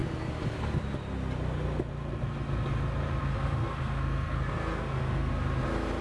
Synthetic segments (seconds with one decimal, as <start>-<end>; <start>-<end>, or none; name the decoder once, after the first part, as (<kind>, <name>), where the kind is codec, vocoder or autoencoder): 3.2-5.3 (codec, SNAC)